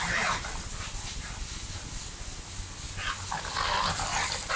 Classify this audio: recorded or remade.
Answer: recorded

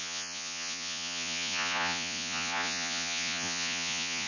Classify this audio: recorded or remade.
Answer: remade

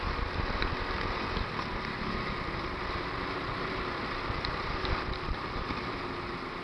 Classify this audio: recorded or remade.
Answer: recorded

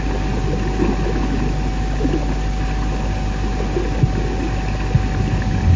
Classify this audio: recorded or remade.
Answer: recorded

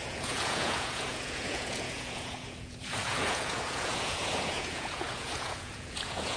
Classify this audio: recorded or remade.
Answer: remade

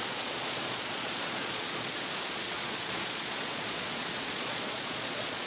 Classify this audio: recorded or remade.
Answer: remade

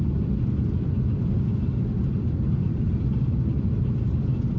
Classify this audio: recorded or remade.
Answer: recorded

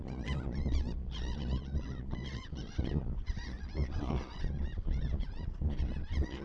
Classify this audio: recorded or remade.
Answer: remade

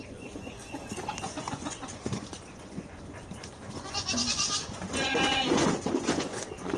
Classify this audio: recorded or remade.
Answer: remade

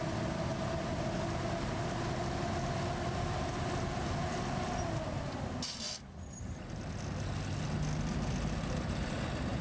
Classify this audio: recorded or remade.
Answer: recorded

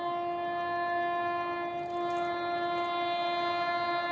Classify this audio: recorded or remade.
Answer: recorded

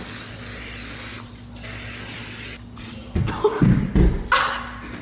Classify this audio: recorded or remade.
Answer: recorded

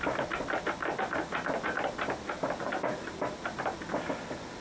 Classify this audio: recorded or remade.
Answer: recorded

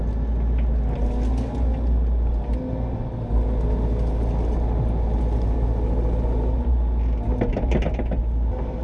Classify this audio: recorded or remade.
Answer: recorded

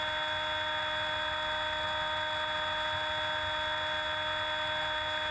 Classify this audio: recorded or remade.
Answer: recorded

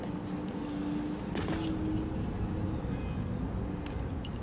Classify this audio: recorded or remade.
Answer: recorded